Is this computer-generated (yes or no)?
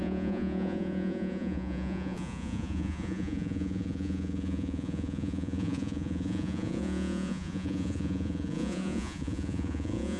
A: yes